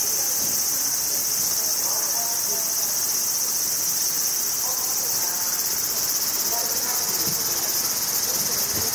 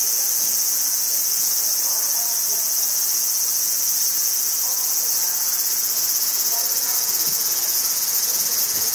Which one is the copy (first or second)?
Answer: second